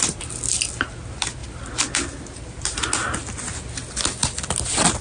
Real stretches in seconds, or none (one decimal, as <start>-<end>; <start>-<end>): 0.0-5.0